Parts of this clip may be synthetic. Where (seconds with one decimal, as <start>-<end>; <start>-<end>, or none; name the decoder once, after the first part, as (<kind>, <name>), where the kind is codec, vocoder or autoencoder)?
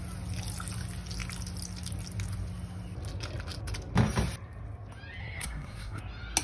5.2-6.0 (codec, SNAC)